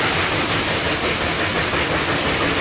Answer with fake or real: real